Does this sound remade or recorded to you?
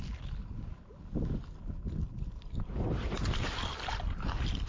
recorded